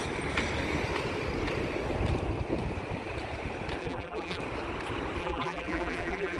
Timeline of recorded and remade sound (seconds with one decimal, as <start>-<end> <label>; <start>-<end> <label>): 0.0-3.8 recorded; 3.8-4.4 remade; 4.4-5.2 recorded; 5.2-6.4 remade